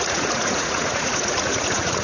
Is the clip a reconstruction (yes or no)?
yes